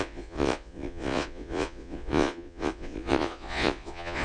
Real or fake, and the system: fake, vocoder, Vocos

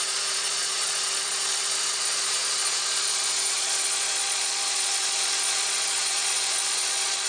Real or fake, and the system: fake, vocoder, Vocos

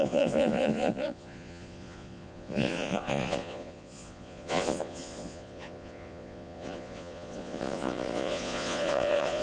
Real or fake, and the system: fake, vocoder, Vocos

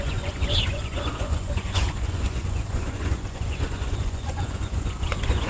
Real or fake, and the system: fake, vocoder, Vocos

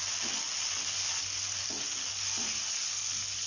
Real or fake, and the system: real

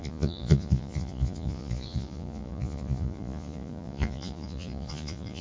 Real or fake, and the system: fake, vocoder, Vocos